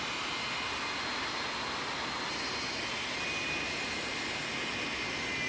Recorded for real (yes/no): yes